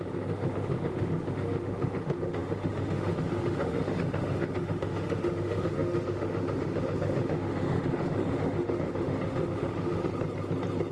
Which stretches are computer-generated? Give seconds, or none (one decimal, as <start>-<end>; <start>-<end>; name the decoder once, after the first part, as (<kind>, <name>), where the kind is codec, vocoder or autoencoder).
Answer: 0.0-10.1 (autoencoder, DAC-VAE)